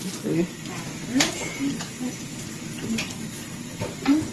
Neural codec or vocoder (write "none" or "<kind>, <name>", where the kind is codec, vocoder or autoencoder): vocoder, BigVGAN v2